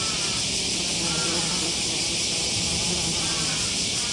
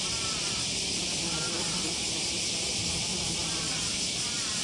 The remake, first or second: second